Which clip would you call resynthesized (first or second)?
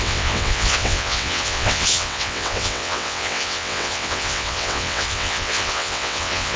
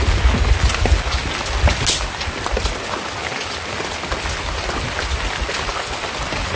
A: first